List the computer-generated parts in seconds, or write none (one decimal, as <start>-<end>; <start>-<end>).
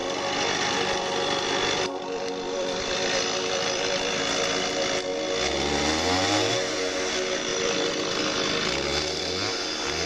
0.0-4.2; 7.5-8.2